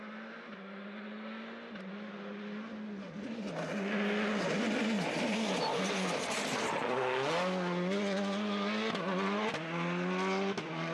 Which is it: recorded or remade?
recorded